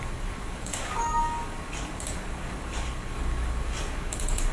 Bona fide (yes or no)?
no